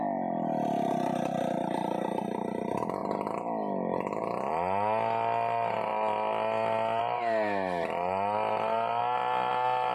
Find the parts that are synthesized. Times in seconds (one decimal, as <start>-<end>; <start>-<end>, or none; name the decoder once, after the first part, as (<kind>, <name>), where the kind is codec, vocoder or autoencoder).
none